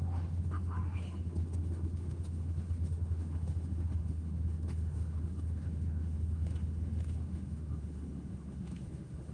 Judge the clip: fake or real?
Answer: fake